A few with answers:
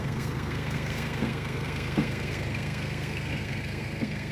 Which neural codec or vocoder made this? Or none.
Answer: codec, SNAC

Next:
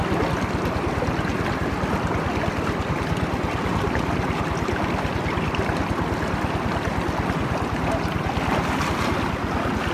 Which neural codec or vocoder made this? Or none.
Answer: none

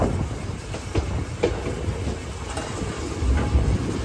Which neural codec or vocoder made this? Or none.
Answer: none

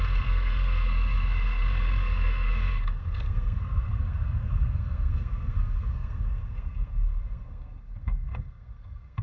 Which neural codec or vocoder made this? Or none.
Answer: codec, SNAC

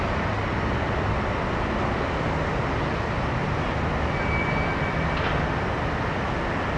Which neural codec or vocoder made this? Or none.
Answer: none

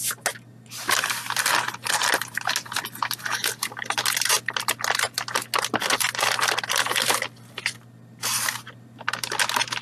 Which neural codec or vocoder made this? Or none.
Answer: none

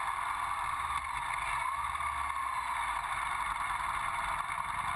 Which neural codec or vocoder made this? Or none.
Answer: none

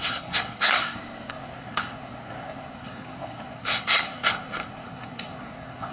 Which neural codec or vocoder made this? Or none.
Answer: codec, SNAC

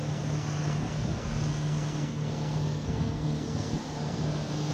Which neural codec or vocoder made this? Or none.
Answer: codec, SNAC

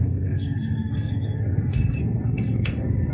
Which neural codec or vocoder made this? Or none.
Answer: codec, SNAC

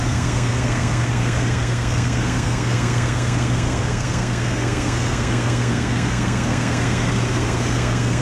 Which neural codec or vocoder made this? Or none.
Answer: codec, SNAC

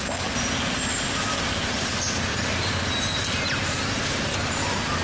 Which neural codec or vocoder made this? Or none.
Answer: none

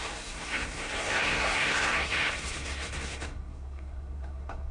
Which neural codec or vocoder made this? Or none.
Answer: codec, SNAC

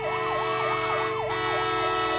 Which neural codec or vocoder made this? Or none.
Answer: none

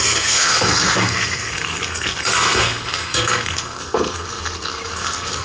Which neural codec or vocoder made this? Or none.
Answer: codec, SNAC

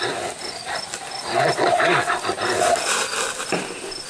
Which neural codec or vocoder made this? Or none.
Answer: none